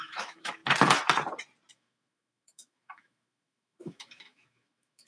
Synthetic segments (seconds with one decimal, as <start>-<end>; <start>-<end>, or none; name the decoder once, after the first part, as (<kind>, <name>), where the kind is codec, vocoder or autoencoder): 0.0-0.6 (autoencoder, DAC-VAE); 1.7-5.1